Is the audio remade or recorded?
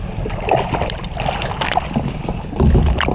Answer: recorded